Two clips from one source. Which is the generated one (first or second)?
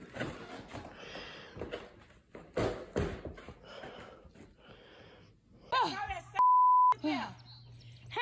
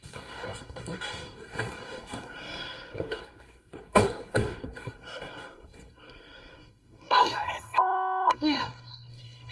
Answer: second